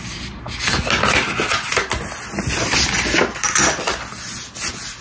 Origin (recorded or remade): recorded